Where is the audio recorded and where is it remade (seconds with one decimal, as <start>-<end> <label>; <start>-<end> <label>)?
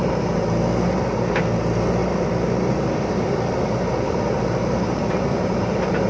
0.0-4.6 recorded; 4.6-6.1 remade